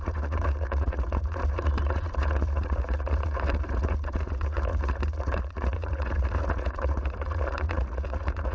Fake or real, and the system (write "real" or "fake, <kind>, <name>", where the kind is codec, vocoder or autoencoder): fake, vocoder, Vocos